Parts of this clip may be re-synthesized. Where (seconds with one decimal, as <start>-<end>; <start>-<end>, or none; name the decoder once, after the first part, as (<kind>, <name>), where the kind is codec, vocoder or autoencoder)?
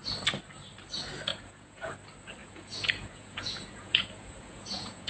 1.3-1.9 (vocoder, Vocos); 2.4-5.1